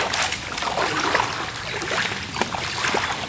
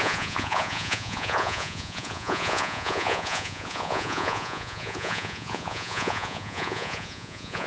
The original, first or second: first